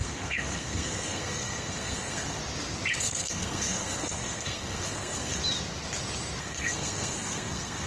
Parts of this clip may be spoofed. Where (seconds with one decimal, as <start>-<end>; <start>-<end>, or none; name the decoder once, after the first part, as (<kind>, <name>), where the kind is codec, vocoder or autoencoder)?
0.0-2.4 (codec, SNAC); 3.0-5.4; 6.4-7.9